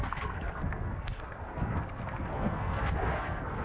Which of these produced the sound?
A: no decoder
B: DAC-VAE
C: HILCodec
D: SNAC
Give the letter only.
D